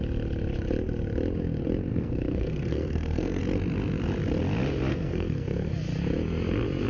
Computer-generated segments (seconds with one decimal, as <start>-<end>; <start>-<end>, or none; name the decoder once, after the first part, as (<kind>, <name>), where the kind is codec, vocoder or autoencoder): 1.9-3.4 (codec, SNAC); 4.9-5.7